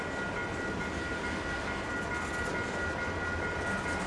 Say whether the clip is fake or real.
real